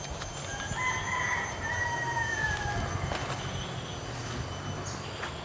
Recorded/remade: recorded